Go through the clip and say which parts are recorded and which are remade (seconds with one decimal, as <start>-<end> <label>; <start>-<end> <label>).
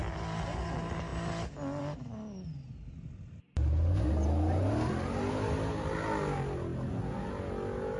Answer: 0.0-8.0 recorded